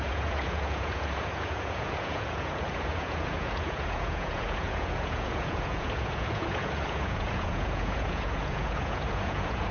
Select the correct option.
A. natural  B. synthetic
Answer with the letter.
B